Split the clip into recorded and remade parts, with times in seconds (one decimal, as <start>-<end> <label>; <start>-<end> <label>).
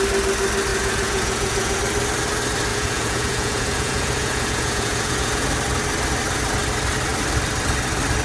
0.0-0.7 recorded; 0.7-1.8 remade; 1.8-2.7 recorded; 2.7-5.5 remade; 5.5-8.2 recorded